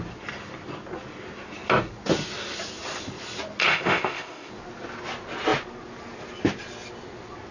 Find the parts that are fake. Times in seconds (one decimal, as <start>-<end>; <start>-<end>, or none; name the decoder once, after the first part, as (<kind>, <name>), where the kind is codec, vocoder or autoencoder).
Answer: 3.6-4.5 (codec, ZipCodec)